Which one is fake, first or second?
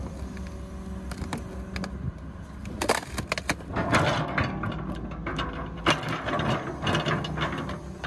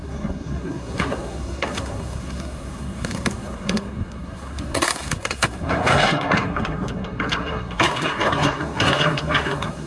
second